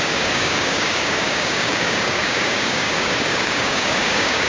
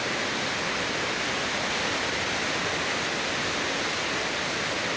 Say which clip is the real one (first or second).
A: second